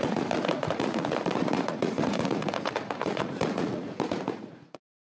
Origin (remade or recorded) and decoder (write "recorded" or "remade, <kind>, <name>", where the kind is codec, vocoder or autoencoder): remade, vocoder, Vocos